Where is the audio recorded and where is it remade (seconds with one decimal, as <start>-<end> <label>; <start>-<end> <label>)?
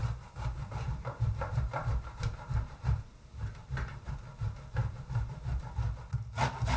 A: 0.0-4.1 remade; 4.1-4.8 recorded; 4.8-5.6 remade; 5.6-6.8 recorded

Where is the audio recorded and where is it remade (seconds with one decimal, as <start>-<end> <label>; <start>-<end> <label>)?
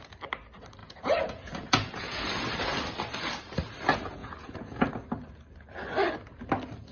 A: 0.0-0.8 recorded; 0.8-2.2 remade; 2.2-4.2 recorded; 4.2-4.9 remade; 4.9-6.9 recorded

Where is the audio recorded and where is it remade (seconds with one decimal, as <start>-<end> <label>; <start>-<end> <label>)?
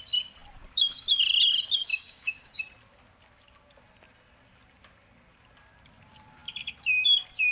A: 0.0-1.9 recorded; 1.9-2.6 remade; 2.6-7.5 recorded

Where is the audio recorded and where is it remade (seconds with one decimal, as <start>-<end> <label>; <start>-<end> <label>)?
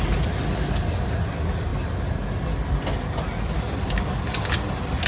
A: 0.0-5.1 recorded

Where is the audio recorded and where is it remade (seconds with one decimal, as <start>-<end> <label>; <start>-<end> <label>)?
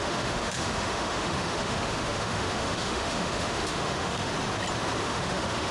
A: 0.0-4.3 remade; 4.3-5.0 recorded; 5.0-5.7 remade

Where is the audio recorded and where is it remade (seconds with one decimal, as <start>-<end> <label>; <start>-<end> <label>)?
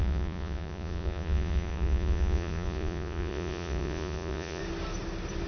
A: 0.0-4.6 remade; 4.6-5.5 recorded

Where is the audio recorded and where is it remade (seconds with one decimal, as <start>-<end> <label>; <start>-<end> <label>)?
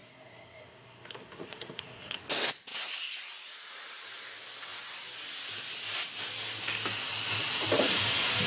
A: 0.0-2.2 remade; 2.2-8.5 recorded